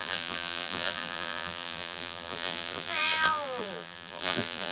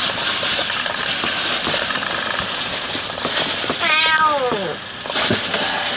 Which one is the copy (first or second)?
first